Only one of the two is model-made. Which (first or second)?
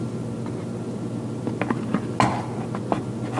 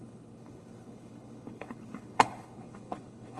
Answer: second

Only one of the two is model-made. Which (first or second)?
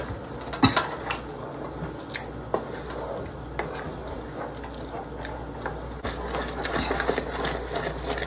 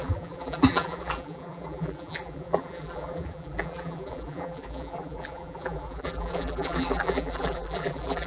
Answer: second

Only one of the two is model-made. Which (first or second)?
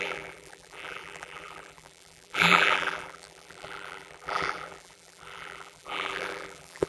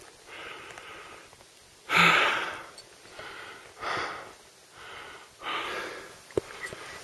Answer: first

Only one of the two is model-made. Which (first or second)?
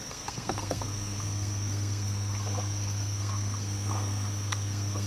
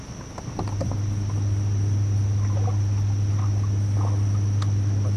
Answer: first